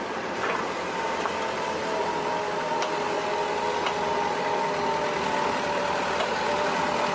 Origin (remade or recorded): recorded